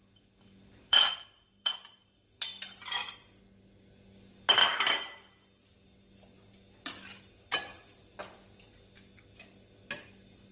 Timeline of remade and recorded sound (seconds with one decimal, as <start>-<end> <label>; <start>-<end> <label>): 0.0-0.8 recorded; 0.8-1.7 remade; 1.7-7.7 recorded; 7.7-8.2 remade; 8.2-10.5 recorded

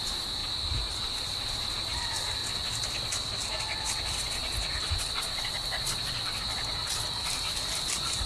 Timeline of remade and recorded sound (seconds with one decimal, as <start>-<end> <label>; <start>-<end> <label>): 0.0-2.4 remade; 2.4-4.9 recorded; 4.9-8.3 remade

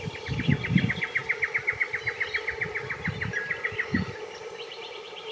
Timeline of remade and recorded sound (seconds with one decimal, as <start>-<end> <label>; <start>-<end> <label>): 0.0-1.2 remade; 1.2-4.4 recorded; 4.4-5.3 remade